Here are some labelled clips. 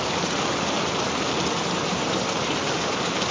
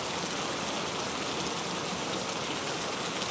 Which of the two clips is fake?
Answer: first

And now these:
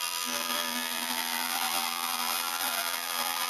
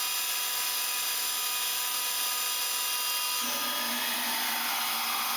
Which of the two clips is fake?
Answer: first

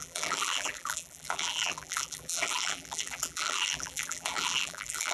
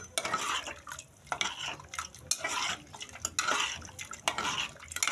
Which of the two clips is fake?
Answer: first